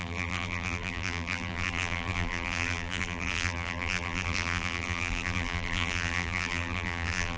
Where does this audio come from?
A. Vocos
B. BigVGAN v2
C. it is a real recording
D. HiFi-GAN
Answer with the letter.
B